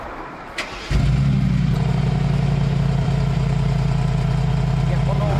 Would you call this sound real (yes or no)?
yes